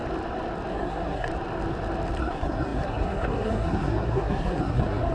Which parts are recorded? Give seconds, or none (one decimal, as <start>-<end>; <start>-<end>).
0.0-0.7; 1.3-2.2